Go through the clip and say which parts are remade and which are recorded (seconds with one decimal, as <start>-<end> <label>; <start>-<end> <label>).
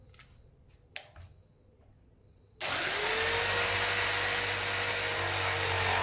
0.0-6.0 recorded